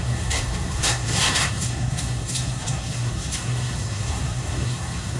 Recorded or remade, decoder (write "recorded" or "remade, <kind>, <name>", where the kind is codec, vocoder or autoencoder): remade, codec, SNAC